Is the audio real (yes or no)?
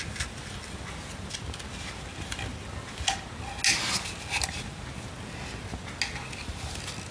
yes